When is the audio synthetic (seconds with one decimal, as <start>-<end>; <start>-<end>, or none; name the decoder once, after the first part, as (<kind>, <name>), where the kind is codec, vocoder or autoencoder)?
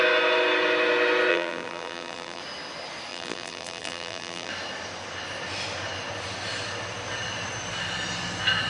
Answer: 1.3-2.4 (vocoder, BigVGAN v2); 3.1-4.5